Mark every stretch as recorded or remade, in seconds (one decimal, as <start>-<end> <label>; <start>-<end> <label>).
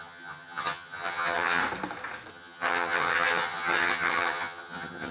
0.0-1.6 remade; 1.6-2.3 recorded; 2.3-5.1 remade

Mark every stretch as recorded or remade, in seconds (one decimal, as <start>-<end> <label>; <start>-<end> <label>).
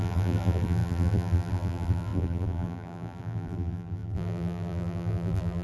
0.0-5.6 remade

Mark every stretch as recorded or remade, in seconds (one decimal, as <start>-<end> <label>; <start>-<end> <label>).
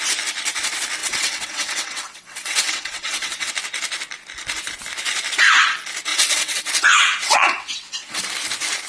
0.0-1.0 recorded; 1.0-3.5 remade; 3.5-6.1 recorded; 6.1-8.2 remade; 8.2-8.9 recorded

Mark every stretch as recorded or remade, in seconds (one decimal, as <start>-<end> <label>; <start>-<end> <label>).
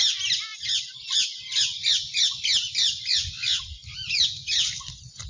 0.0-5.3 recorded